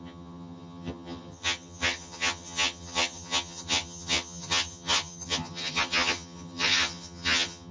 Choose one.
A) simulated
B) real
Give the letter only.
A